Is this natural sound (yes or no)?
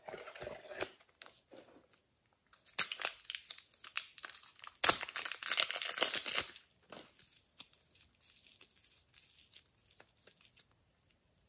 yes